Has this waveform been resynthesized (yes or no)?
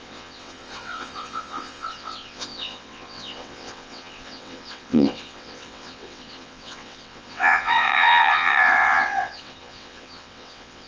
yes